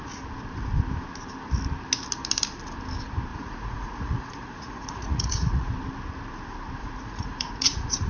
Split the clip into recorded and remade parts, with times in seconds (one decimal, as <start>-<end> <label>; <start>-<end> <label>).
0.0-3.3 recorded; 3.3-5.7 remade; 5.7-6.8 recorded; 6.8-8.1 remade